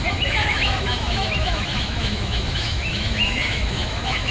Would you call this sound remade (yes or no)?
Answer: yes